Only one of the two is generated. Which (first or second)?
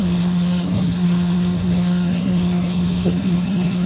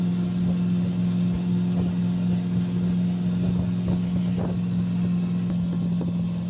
first